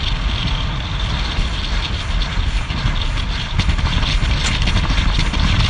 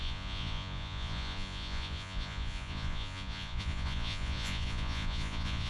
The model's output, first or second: second